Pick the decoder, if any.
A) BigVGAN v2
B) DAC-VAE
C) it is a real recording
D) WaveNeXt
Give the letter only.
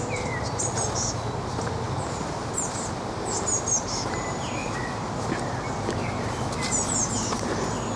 C